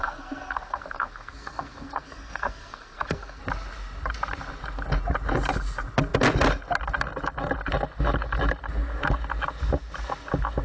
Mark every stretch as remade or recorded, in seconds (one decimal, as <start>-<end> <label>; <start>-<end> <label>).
0.0-3.4 remade; 3.4-10.6 recorded